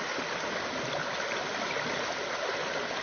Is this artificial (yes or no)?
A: no